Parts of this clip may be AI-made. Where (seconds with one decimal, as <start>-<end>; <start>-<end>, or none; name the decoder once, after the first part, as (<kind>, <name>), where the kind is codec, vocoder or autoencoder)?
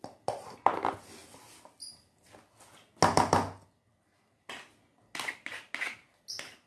none